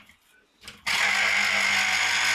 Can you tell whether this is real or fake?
real